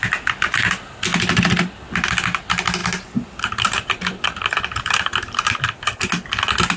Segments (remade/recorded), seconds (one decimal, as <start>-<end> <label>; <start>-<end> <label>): 0.0-2.8 recorded; 2.8-4.5 remade; 4.5-6.8 recorded